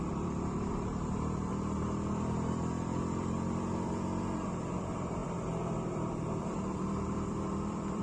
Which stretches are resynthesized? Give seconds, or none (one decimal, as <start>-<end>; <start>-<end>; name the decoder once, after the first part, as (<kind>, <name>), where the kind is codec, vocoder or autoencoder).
0.0-1.5 (vocoder, BigVGAN v2); 2.1-8.0